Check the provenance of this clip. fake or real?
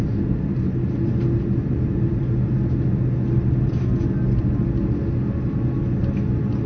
real